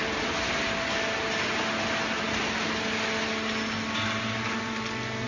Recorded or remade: recorded